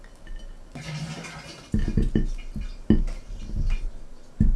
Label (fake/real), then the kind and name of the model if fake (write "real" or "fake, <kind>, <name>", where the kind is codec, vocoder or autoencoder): real